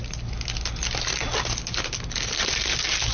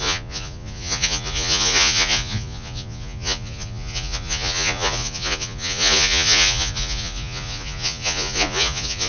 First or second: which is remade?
second